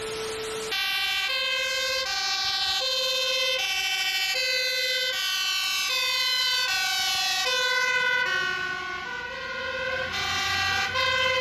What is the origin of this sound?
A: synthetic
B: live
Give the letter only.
B